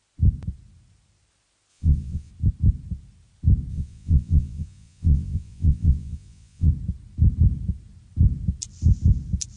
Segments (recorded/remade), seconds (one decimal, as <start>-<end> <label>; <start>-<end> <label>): 0.0-1.7 recorded; 1.7-2.3 remade; 2.3-3.7 recorded; 3.7-6.7 remade; 6.7-9.6 recorded